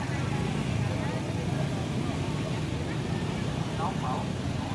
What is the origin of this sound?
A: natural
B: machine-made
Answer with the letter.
A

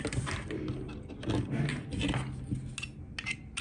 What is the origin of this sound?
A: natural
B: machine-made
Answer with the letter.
A